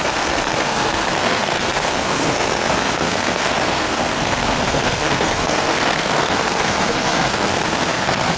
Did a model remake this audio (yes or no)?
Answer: yes